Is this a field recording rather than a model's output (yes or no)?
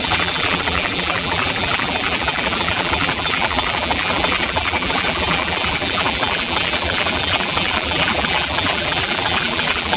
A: no